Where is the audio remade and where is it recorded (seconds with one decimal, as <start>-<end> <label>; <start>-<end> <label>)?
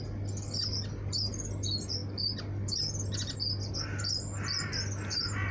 0.0-5.5 recorded